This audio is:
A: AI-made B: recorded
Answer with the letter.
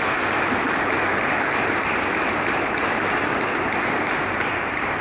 B